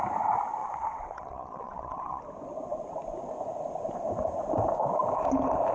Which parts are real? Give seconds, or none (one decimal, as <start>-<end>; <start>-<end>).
0.0-0.6; 2.2-5.7